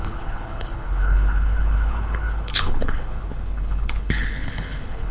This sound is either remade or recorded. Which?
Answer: remade